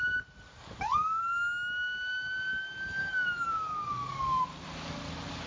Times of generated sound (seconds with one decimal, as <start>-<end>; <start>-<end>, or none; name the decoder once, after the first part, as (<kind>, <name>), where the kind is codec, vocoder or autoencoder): 0.5-1.2 (codec, DAC); 3.0-4.4

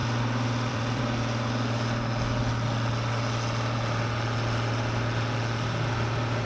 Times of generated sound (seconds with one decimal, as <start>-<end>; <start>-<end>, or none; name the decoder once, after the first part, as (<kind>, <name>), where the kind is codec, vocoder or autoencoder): 0.0-1.0 (vocoder, BigVGAN v2)